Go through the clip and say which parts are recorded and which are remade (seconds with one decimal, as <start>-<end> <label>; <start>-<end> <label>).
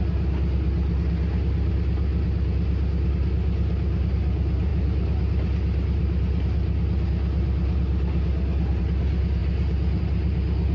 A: 0.0-10.7 recorded